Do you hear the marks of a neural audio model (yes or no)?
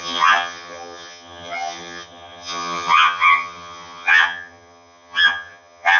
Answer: yes